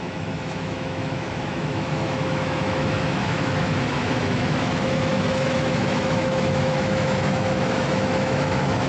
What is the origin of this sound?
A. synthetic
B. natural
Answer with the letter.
A